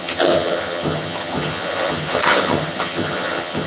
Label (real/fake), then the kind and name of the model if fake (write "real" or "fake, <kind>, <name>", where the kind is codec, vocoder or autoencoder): fake, vocoder, HiFi-GAN